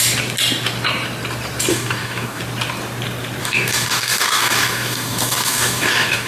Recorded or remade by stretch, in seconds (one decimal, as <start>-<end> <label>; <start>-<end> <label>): 0.0-1.7 recorded; 1.7-2.4 remade; 2.4-3.4 recorded; 3.4-6.3 remade